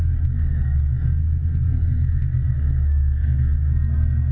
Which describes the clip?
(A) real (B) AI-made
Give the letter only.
B